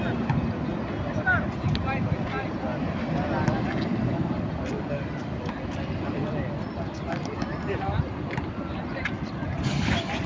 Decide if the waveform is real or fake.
real